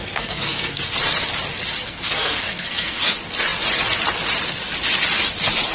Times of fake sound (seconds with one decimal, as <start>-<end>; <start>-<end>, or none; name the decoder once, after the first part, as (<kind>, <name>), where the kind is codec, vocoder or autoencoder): 0.0-0.8 (codec, SNAC); 1.8-3.1